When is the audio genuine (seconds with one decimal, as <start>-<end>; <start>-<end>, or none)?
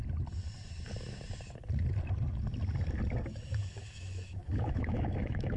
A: 0.0-3.6